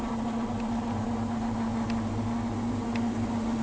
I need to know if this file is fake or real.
real